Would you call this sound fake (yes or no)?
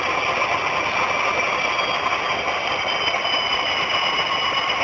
no